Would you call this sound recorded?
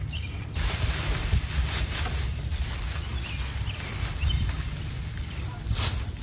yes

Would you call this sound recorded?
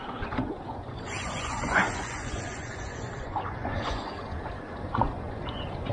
no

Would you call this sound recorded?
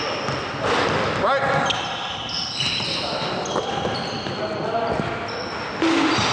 yes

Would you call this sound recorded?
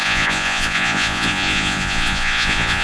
no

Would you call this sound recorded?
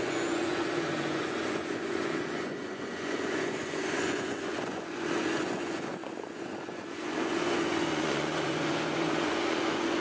no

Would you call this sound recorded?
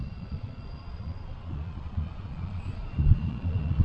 no